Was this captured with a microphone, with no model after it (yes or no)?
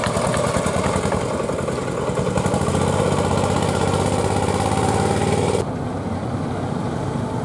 yes